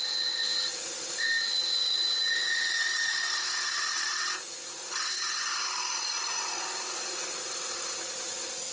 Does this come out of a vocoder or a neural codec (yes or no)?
no